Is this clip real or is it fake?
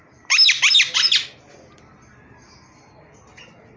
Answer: real